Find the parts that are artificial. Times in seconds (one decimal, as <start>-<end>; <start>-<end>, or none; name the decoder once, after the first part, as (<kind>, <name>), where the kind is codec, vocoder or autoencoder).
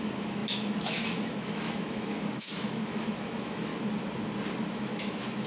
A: 0.0-3.7 (autoencoder, DAC-VAE); 4.7-5.5